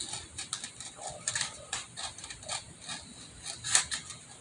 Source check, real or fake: real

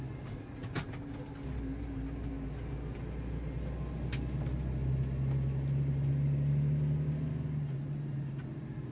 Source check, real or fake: real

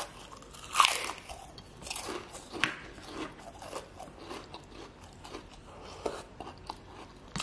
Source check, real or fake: real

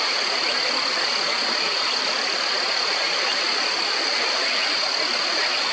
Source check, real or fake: real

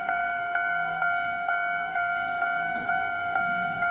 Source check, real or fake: fake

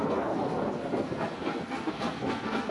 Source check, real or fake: fake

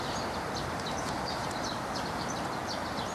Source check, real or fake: real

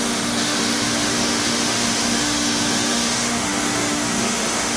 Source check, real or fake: fake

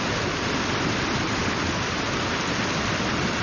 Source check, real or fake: real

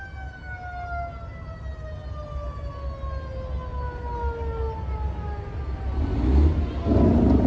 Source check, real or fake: real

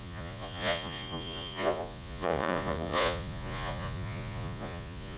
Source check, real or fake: fake